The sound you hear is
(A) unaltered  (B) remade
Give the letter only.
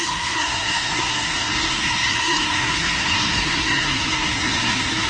B